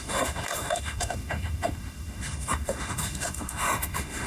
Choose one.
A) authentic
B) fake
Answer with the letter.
B